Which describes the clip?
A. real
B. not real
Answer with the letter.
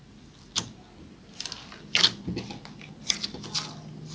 A